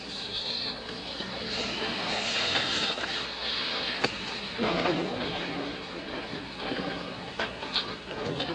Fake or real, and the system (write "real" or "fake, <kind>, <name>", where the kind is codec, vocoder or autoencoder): fake, codec, SNAC